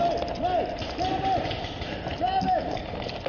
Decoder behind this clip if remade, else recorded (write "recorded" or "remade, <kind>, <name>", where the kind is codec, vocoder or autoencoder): recorded